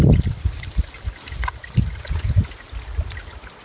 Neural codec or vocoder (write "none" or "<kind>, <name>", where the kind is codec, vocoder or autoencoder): none